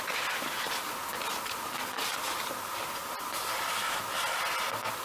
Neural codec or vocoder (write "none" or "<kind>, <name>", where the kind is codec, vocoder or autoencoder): none